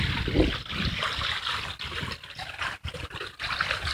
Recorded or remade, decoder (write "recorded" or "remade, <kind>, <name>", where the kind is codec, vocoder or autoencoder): recorded